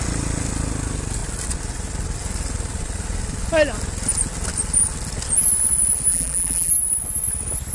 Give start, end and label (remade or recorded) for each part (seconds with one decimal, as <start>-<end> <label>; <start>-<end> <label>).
0.0-6.1 recorded; 6.1-6.7 remade; 6.7-7.7 recorded